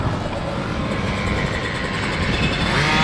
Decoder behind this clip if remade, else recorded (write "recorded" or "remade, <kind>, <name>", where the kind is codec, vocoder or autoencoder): recorded